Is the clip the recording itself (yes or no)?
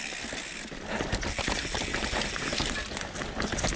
yes